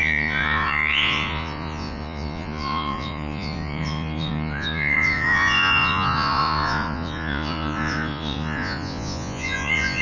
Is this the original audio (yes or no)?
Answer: no